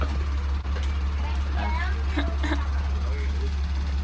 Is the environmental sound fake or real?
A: real